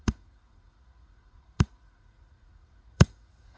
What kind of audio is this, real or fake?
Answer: fake